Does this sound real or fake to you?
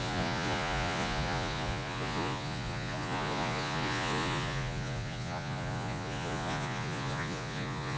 fake